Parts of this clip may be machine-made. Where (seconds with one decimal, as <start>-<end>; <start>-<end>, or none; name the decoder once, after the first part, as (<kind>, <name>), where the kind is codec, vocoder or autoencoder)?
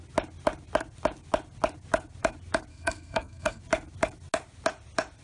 2.7-3.6 (codec, SNAC)